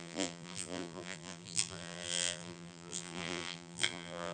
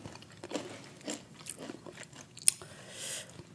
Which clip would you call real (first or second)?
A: second